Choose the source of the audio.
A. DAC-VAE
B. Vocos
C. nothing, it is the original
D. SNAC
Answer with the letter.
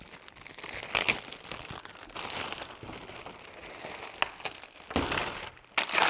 C